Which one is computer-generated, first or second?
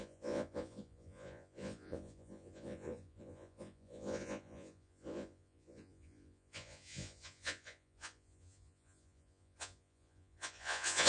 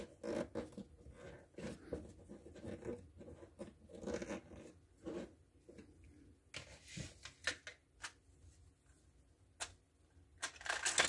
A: first